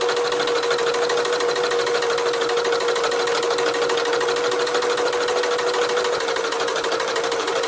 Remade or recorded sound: recorded